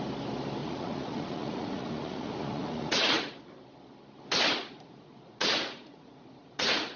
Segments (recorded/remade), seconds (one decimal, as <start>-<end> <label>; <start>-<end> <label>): 0.0-0.6 recorded; 0.6-3.4 remade; 3.4-4.6 recorded; 4.6-7.0 remade